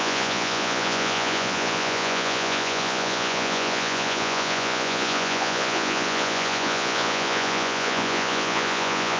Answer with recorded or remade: remade